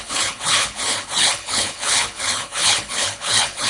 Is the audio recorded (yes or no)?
no